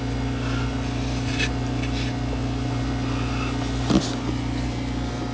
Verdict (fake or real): real